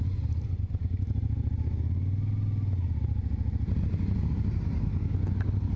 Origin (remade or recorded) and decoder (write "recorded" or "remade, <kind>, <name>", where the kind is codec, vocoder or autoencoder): recorded